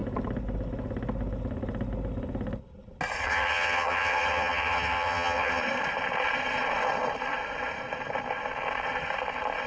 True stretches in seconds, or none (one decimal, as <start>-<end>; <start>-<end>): 0.0-3.2; 5.6-9.7